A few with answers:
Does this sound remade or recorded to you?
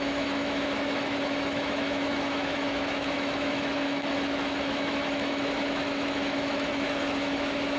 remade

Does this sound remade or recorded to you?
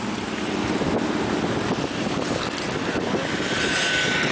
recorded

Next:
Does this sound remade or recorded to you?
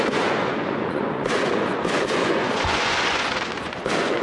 remade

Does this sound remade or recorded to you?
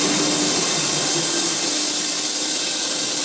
recorded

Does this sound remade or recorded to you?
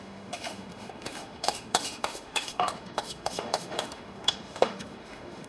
remade